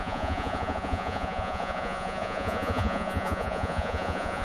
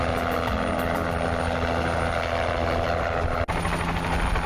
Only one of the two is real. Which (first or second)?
second